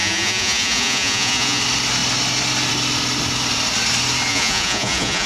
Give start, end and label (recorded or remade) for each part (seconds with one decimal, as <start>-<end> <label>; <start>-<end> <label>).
0.0-1.6 remade; 1.6-4.3 recorded; 4.3-5.3 remade